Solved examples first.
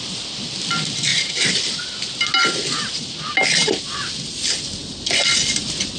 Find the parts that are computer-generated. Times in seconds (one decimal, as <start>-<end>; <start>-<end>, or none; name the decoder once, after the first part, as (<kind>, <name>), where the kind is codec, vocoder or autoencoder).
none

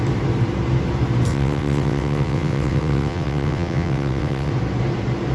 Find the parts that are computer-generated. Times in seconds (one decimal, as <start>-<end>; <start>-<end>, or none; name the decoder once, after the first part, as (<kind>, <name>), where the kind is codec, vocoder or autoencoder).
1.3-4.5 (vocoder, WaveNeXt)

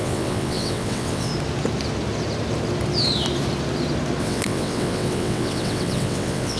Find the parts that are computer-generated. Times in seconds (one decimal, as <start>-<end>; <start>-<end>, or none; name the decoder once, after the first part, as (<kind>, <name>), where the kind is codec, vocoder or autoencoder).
0.0-1.3 (vocoder, WaveNeXt); 4.2-6.6

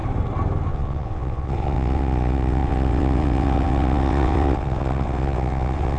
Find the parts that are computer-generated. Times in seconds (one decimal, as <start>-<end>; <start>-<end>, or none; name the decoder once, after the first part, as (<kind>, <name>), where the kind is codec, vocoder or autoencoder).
0.7-6.0 (vocoder, WaveNeXt)

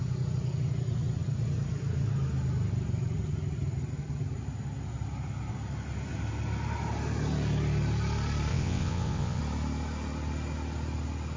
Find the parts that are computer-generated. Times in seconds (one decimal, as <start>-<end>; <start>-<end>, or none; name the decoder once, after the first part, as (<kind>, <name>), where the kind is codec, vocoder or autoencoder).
8.5-9.4 (vocoder, WaveNeXt)

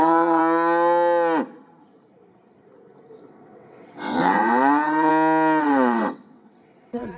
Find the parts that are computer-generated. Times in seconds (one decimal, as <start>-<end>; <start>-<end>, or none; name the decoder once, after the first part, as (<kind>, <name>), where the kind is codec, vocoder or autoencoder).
0.0-0.4 (vocoder, WaveNeXt); 3.1-5.1; 5.6-7.2

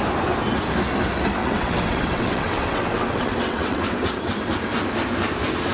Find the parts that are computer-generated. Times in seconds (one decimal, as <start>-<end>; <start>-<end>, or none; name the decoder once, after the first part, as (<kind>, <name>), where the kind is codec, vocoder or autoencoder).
1.4-3.8 (vocoder, WaveNeXt)